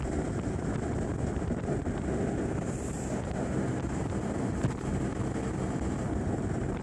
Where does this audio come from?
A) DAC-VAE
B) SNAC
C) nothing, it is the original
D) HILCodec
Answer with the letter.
C